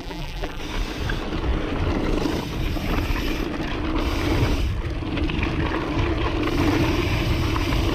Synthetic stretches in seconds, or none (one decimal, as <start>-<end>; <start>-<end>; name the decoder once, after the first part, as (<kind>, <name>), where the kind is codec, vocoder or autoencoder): 0.0-0.6 (vocoder, BigVGAN v2)